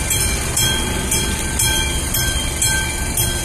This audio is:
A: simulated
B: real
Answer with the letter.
B